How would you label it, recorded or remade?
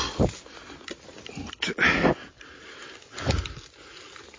recorded